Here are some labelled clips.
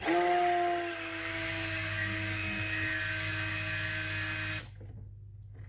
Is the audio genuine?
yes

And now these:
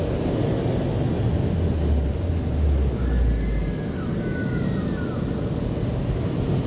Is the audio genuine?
yes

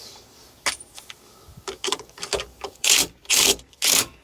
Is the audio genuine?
no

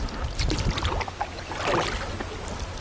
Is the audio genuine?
yes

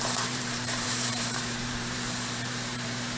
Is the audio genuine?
no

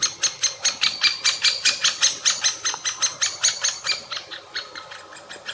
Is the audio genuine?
yes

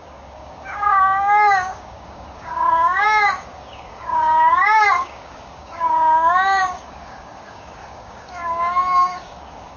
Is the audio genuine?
no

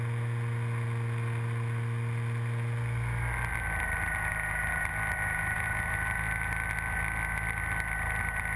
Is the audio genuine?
yes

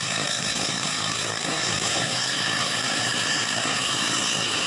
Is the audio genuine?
no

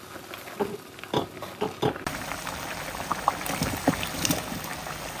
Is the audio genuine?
yes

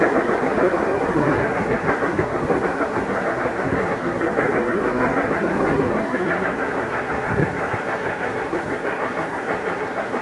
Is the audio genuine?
no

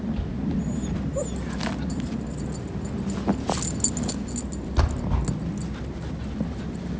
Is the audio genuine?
yes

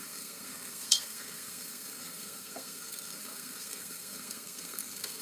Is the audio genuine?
no